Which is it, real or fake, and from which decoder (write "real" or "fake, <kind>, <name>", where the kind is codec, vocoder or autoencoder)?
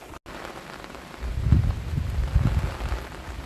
real